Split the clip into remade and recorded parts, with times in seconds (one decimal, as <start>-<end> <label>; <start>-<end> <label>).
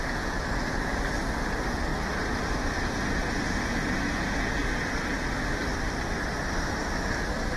0.0-1.9 recorded; 1.9-3.8 remade; 3.8-7.6 recorded